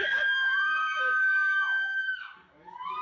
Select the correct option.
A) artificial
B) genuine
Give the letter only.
A